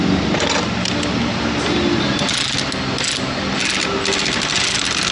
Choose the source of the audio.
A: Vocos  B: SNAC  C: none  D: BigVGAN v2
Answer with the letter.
C